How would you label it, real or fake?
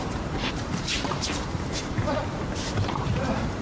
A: fake